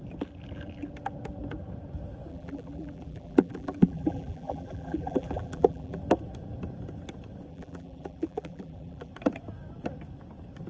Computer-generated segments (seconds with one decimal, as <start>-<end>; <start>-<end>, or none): 2.3-6.0; 7.5-9.1